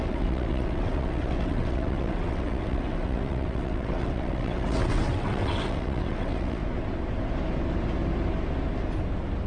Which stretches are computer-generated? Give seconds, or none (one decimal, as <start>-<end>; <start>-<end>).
0.0-6.6